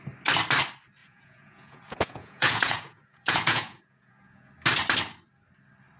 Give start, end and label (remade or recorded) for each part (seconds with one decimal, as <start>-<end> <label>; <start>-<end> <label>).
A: 0.0-1.0 recorded; 1.0-4.5 remade; 4.5-6.0 recorded